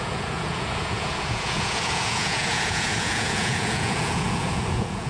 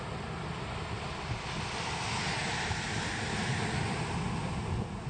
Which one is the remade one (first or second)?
first